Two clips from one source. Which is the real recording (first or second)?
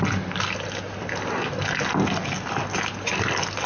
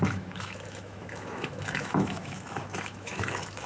first